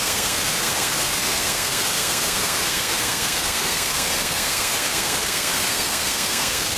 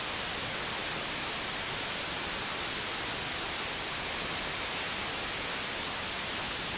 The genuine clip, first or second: second